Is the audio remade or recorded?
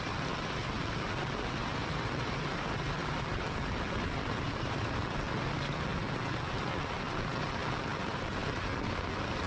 recorded